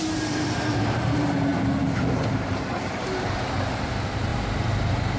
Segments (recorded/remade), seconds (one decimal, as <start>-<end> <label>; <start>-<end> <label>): 0.0-5.2 remade